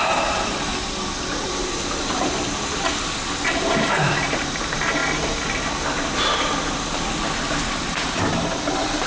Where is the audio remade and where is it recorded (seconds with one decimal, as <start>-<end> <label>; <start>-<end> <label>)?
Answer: 0.0-0.7 remade; 0.7-3.5 recorded; 3.5-5.0 remade; 5.0-7.7 recorded; 7.7-9.1 remade